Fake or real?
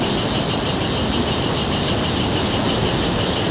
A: real